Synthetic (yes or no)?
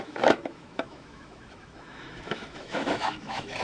yes